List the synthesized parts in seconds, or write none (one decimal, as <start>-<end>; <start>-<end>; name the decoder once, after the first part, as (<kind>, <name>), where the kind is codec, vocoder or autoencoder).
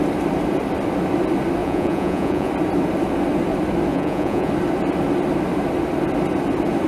1.6-2.5 (vocoder, Vocos); 3.9-4.5